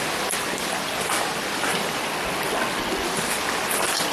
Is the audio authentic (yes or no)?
yes